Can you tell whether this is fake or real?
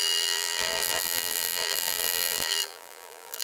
fake